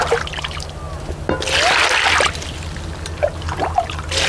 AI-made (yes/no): no